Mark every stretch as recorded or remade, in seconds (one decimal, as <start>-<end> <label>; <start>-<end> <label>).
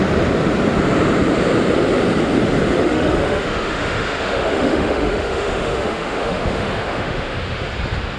0.0-2.8 recorded; 2.8-7.7 remade; 7.7-8.2 recorded